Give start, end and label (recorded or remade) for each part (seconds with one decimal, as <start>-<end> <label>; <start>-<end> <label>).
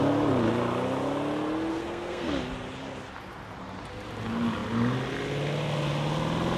0.0-1.7 recorded; 1.7-2.3 remade; 2.3-6.6 recorded